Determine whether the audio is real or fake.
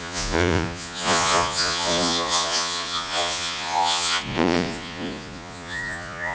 fake